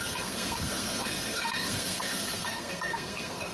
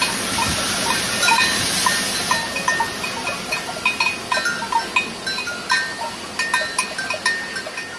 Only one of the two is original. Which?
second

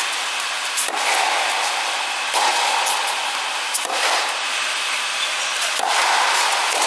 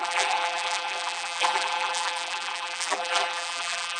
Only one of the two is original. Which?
first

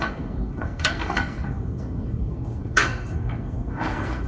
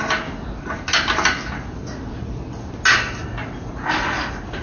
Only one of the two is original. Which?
second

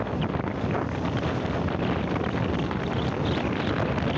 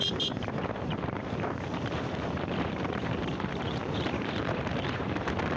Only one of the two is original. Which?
first